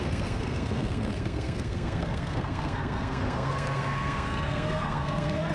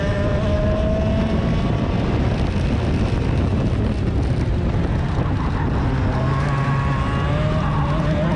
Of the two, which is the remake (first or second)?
first